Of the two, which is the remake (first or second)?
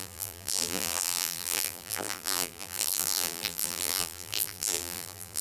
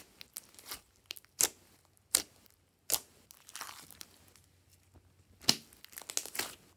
first